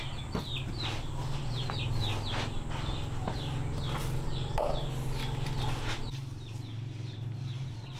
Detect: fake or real real